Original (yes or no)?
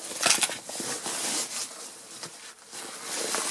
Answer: yes